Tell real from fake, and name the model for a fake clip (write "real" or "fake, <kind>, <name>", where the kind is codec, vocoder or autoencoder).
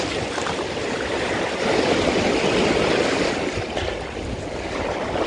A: real